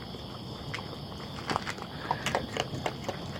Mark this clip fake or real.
real